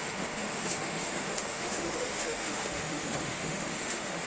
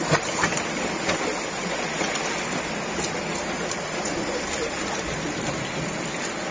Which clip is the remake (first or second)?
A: first